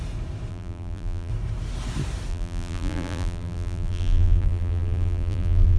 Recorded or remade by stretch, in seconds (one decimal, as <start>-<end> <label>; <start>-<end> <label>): 0.0-0.5 recorded; 0.5-1.3 remade; 1.3-2.3 recorded; 2.3-5.8 remade